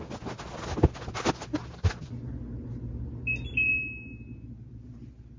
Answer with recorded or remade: recorded